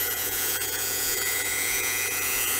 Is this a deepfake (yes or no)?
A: yes